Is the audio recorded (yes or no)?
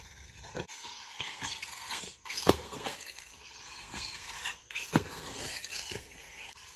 no